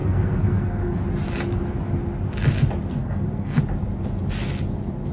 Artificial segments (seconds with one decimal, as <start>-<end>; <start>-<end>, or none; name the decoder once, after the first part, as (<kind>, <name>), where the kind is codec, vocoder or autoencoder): 0.0-1.0 (codec, SNAC); 3.0-3.6